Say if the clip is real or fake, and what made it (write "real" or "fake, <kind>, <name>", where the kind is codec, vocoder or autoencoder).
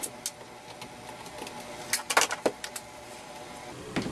real